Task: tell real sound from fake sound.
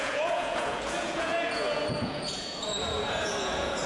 fake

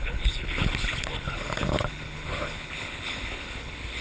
fake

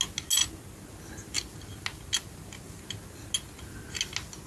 real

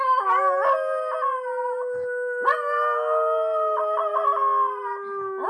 real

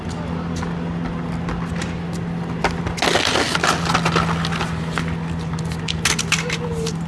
real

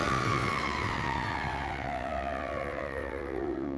fake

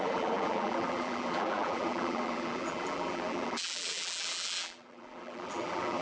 fake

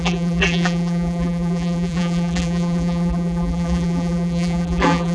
fake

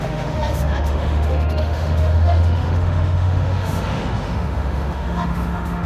fake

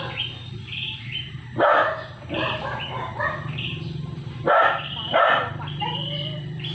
fake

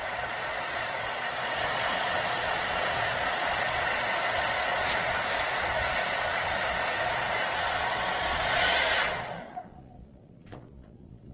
fake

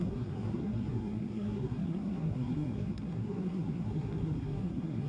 fake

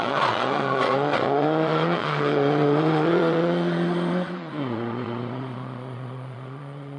fake